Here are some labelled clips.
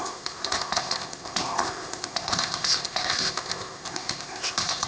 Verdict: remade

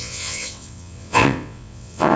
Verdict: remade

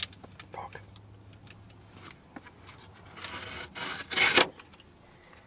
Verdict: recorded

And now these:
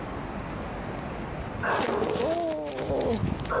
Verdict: recorded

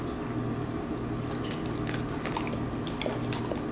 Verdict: recorded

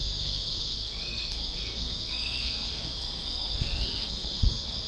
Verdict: remade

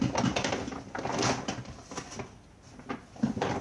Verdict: recorded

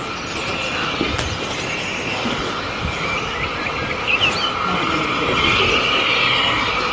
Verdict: recorded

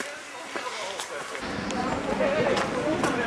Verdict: recorded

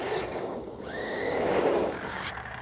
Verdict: remade